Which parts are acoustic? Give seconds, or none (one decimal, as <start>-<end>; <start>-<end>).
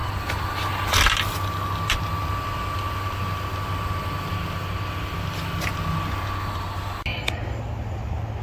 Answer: 0.0-8.4